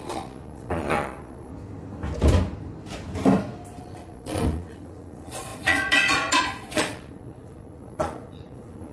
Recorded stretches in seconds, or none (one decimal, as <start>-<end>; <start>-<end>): 1.5-3.8